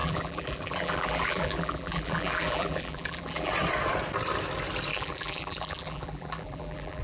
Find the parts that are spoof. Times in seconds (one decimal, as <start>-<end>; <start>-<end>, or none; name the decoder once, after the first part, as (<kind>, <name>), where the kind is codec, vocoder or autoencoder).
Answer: 0.0-3.5 (vocoder, BigVGAN v2); 4.9-7.0